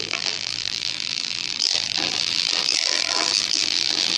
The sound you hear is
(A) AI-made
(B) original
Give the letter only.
A